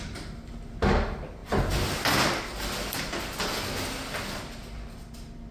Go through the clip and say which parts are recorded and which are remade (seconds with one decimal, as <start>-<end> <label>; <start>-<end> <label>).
0.0-5.5 recorded